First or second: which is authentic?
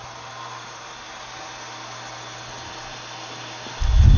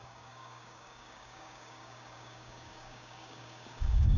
first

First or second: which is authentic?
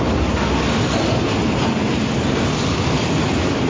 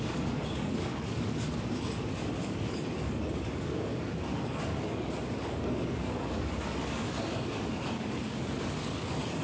first